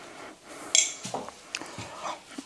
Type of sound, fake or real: real